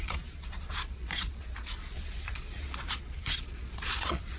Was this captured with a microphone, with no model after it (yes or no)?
no